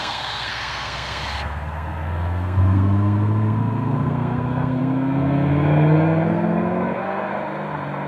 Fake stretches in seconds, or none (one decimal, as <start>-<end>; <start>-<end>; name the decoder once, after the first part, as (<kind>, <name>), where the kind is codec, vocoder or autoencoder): 0.0-7.3 (codec, SNAC)